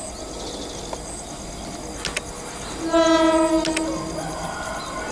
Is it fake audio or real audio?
real